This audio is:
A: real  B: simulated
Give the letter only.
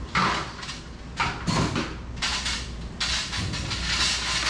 A